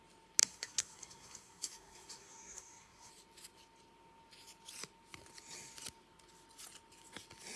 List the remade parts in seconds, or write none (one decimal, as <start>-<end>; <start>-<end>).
0.4-3.1